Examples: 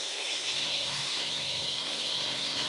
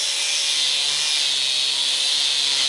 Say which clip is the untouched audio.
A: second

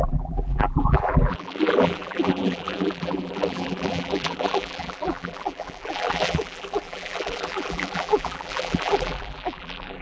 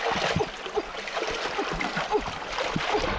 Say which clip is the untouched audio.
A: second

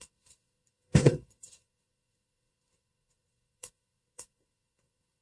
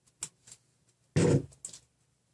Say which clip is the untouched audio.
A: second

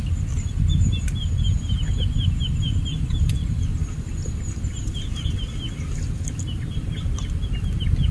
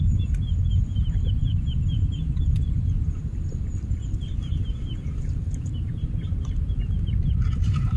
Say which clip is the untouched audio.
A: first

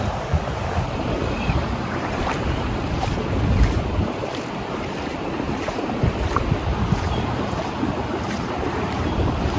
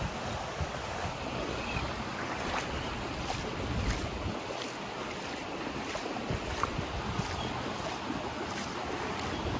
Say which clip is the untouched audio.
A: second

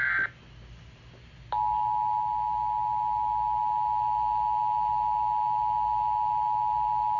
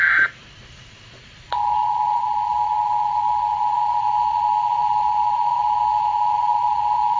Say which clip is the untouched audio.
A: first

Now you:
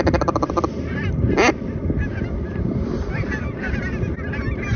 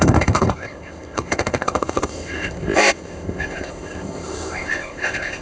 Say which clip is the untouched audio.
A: first